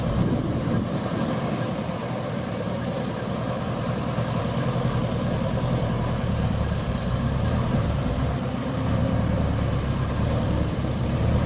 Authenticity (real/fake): fake